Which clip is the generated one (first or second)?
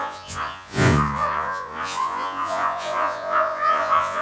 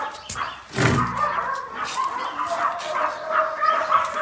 first